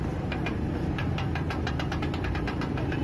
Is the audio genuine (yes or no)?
yes